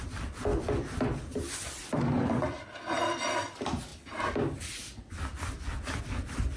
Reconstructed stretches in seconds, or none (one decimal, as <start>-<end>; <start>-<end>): 0.5-2.6